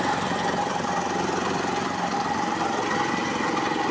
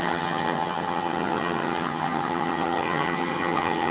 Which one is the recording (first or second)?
first